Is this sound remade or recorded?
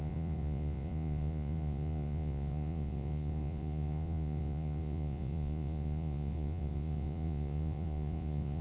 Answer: remade